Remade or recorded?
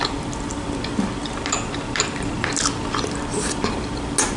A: recorded